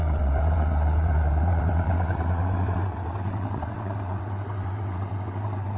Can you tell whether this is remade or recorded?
remade